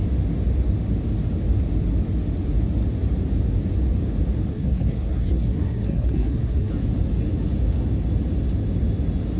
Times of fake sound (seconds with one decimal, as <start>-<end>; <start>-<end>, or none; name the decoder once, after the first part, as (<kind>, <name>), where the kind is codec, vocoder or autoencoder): 4.5-6.7 (codec, SNAC)

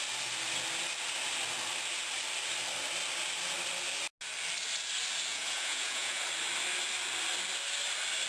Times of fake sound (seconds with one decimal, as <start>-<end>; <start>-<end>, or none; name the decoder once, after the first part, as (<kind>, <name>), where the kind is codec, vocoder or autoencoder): 5.3-6.2 (vocoder, Vocos)

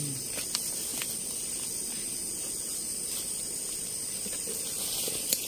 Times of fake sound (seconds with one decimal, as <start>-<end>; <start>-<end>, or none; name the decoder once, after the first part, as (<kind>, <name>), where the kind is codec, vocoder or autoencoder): none

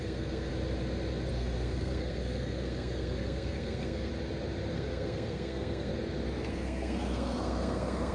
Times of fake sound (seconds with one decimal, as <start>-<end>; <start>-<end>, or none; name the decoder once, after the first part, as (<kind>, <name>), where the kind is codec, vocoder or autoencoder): 0.0-0.5 (codec, SNAC); 1.3-4.1; 4.7-5.9; 6.5-8.1

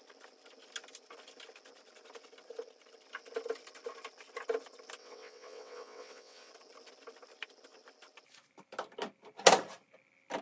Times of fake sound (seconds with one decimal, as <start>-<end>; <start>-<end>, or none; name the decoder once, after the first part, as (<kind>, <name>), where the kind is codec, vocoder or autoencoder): 5.0-6.5 (vocoder, WaveNeXt)

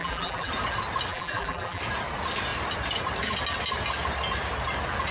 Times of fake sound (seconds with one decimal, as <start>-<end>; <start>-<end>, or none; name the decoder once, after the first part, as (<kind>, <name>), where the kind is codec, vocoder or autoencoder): 0.0-0.5 (vocoder, BigVGAN v2); 1.1-1.8